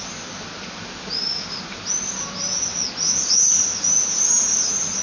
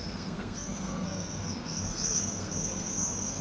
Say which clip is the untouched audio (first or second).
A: first